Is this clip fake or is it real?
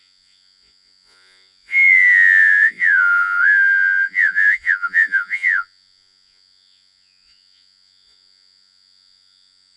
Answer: fake